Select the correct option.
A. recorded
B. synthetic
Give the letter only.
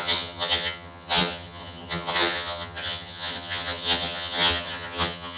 B